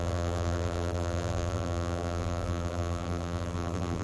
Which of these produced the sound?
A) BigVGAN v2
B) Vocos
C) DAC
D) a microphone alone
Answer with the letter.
A